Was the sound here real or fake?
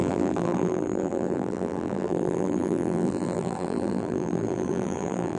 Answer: fake